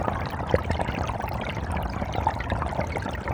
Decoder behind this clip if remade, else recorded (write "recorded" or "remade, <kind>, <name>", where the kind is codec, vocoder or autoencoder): remade, vocoder, BigVGAN v2